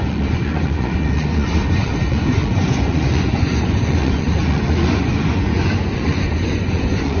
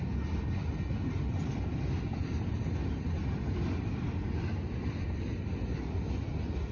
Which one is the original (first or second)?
second